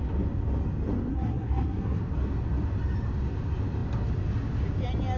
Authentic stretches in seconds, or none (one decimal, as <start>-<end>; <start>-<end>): 0.0-1.1; 2.0-5.2